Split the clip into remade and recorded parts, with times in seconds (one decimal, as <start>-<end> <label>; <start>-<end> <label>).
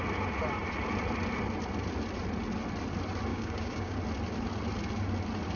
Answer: 0.0-3.3 recorded; 3.3-4.0 remade; 4.0-5.6 recorded